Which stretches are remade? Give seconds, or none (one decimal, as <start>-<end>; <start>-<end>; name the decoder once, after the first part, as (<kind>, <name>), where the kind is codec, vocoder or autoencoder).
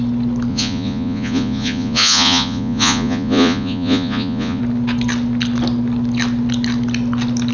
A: 0.5-4.6 (vocoder, Vocos)